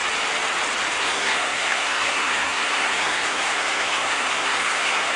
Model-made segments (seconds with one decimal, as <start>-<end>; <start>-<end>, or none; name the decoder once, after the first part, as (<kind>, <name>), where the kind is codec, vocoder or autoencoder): 1.0-5.2 (codec, SNAC)